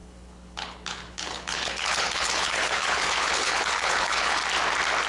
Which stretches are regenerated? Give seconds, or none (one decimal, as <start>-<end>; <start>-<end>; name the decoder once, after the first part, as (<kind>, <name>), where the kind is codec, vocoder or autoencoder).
0.0-4.4 (codec, HILCodec)